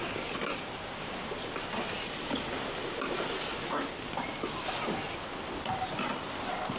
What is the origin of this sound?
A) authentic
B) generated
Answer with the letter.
A